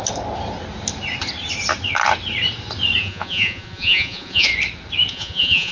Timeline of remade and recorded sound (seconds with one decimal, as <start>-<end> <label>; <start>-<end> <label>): 0.0-3.0 recorded; 3.0-4.5 remade; 4.5-5.1 recorded; 5.1-5.7 remade